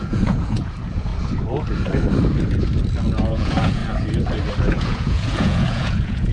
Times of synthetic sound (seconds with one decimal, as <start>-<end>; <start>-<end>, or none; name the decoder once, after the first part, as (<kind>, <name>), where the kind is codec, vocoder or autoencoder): 0.0-1.1 (vocoder, Vocos); 3.3-3.8; 4.6-6.3